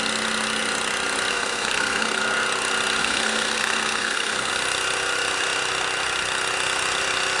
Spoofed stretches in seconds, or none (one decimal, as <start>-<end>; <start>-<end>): 1.3-2.2; 3.0-4.5